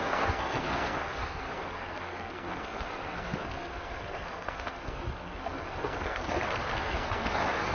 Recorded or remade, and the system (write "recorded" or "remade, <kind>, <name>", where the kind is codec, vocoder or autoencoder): remade, codec, SNAC